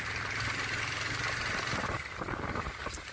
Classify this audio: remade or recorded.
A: recorded